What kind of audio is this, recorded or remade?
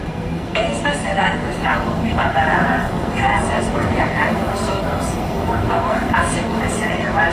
remade